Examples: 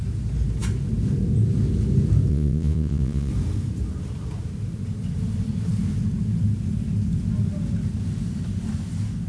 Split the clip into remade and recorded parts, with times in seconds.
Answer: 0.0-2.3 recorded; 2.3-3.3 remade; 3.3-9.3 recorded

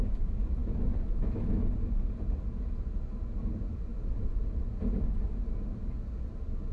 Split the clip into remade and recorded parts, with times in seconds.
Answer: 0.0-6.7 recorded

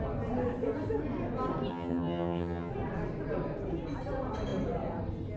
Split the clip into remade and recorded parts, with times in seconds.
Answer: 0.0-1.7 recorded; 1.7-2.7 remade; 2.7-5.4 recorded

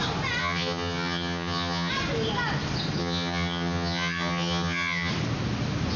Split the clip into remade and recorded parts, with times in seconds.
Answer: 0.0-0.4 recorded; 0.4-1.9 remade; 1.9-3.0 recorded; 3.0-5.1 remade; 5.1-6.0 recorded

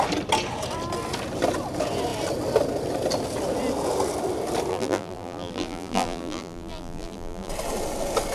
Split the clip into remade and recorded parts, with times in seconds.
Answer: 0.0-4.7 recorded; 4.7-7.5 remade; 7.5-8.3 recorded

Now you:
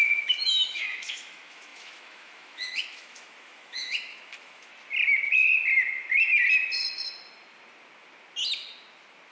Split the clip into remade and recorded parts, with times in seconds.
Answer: 0.0-4.7 remade; 4.7-9.3 recorded